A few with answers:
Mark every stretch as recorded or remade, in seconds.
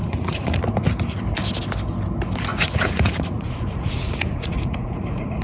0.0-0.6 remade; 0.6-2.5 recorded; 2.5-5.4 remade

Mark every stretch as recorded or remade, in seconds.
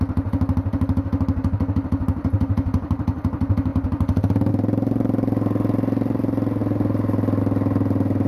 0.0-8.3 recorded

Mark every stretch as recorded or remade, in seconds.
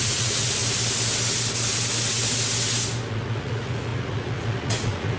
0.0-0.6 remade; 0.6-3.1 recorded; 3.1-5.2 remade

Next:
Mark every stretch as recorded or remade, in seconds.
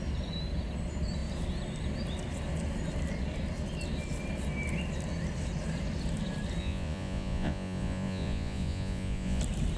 0.0-6.6 recorded; 6.6-9.4 remade; 9.4-9.8 recorded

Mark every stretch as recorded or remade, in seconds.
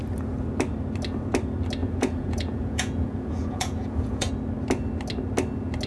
0.0-1.8 recorded; 1.8-4.3 remade; 4.3-5.9 recorded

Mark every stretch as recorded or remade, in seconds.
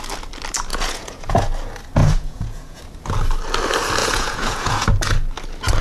0.0-0.7 recorded; 0.7-1.4 remade; 1.4-2.0 recorded; 2.0-2.8 remade; 2.8-4.0 recorded; 4.0-4.9 remade; 4.9-5.8 recorded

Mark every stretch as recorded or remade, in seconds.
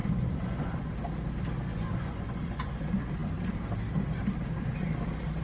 0.0-0.9 remade; 0.9-1.7 recorded; 1.7-2.7 remade; 2.7-5.4 recorded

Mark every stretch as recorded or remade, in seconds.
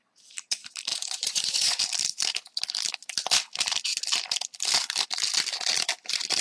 0.0-0.9 recorded; 0.9-1.8 remade; 1.8-6.4 recorded